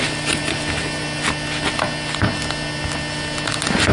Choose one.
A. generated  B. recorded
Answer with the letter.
B